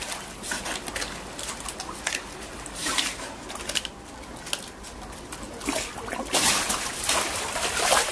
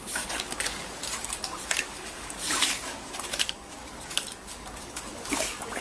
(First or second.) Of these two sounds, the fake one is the second